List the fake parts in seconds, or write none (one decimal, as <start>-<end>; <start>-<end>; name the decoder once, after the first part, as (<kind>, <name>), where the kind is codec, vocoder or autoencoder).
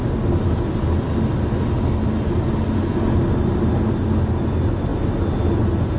none